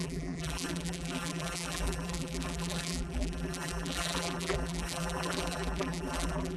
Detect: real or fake fake